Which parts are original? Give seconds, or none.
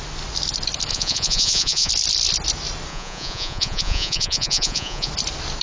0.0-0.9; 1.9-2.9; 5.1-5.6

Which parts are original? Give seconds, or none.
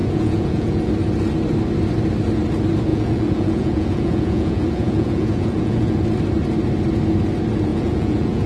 0.9-2.9; 6.0-7.7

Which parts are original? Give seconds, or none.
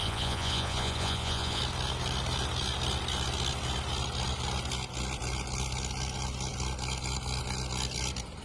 1.6-8.4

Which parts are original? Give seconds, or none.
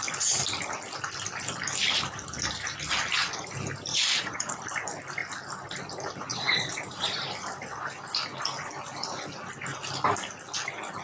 0.0-3.9; 4.5-6.3; 7.2-11.0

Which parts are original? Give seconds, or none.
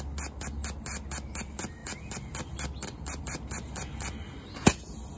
0.0-5.2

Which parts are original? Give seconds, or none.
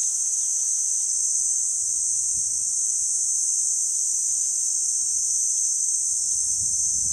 0.0-7.1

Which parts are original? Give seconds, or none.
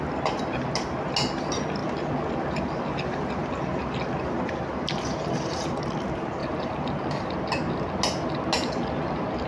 0.0-9.5